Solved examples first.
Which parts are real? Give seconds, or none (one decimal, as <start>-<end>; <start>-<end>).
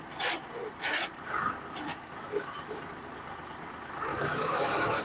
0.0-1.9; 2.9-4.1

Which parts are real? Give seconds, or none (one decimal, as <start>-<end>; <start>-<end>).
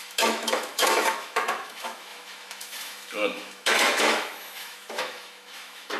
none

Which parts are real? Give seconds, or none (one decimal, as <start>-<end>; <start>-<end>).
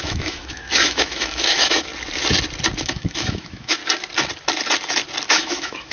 1.9-2.8; 3.8-5.3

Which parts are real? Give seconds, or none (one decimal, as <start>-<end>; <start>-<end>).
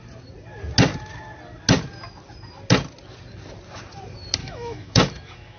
0.0-4.4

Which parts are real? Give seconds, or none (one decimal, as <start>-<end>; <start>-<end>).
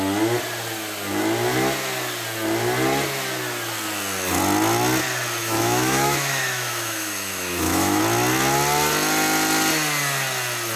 0.0-5.4; 8.0-10.8